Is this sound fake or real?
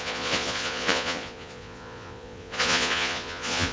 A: fake